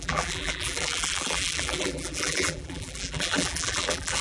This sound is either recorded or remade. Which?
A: remade